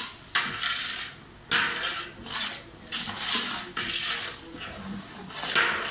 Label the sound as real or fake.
real